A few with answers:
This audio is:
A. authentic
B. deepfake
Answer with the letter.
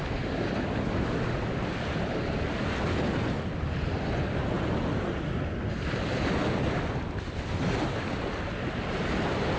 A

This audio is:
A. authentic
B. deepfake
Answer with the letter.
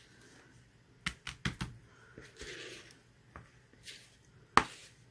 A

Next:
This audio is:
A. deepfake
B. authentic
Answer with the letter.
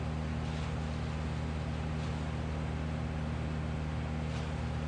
B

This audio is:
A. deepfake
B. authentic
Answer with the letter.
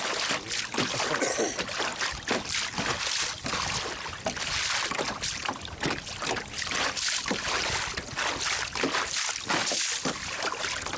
B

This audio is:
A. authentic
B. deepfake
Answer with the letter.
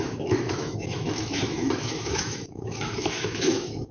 B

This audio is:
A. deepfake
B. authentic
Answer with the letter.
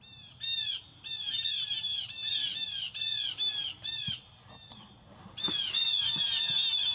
B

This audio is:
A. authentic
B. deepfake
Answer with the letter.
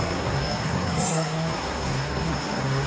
B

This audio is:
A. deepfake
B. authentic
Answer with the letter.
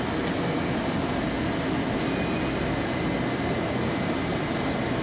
B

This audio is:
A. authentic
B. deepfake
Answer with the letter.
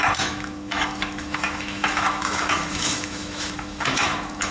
B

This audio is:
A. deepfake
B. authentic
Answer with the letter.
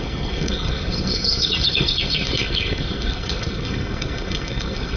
A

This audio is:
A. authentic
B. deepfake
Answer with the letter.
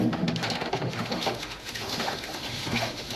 B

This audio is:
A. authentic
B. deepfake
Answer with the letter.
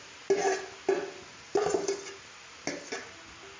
A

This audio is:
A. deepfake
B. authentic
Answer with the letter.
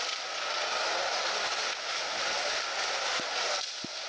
B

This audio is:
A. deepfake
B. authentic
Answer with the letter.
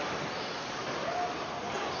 B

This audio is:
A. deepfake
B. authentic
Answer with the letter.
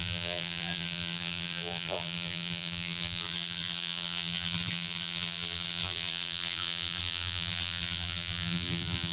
A